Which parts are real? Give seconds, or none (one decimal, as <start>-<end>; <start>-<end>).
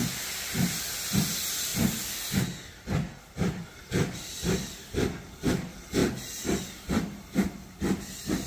1.7-3.3